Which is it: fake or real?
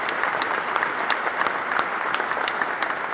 real